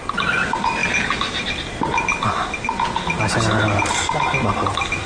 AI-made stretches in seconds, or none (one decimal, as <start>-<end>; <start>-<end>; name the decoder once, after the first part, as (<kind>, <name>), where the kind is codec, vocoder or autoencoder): none